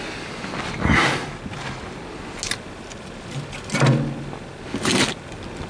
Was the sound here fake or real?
real